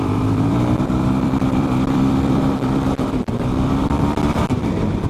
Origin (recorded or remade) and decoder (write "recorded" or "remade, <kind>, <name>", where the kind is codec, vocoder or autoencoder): remade, vocoder, BigVGAN v2